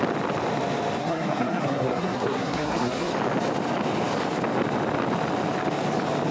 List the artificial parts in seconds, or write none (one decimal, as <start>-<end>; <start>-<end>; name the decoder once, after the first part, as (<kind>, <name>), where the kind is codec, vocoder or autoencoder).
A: 1.0-3.1 (codec, SNAC)